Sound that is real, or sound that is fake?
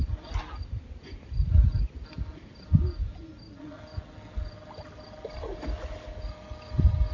real